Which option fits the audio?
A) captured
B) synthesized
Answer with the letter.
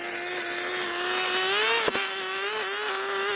A